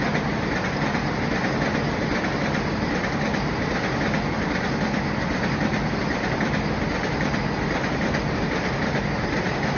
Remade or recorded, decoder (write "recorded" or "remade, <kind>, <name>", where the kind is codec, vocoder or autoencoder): recorded